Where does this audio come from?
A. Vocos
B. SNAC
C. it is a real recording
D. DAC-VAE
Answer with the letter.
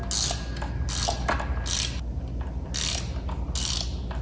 C